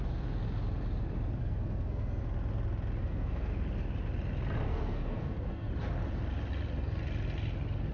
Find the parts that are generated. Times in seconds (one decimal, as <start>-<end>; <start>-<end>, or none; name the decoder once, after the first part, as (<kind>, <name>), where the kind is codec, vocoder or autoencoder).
1.4-2.2 (codec, SNAC); 3.0-3.5; 4.7-5.7